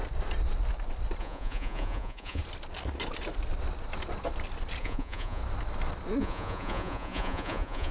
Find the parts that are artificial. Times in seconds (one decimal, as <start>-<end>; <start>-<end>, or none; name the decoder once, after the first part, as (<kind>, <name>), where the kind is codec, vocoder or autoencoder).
1.2-2.4 (vocoder, Vocos); 4.8-5.4; 6.2-7.9